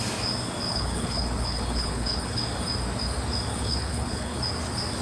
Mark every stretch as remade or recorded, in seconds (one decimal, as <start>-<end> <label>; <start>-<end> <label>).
0.0-0.7 recorded; 0.7-2.4 remade; 2.4-3.5 recorded; 3.5-4.4 remade; 4.4-5.0 recorded